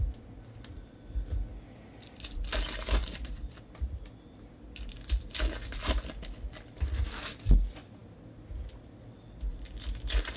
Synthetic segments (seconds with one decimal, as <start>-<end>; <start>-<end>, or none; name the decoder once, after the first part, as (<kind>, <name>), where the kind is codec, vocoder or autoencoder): 3.0-3.6 (vocoder, BigVGAN v2)